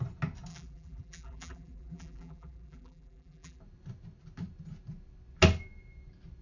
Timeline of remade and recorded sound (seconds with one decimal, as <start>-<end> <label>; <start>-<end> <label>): 0.0-0.5 recorded; 0.5-3.6 remade; 3.6-6.4 recorded